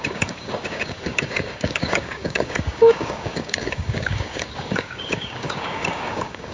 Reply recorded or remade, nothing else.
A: remade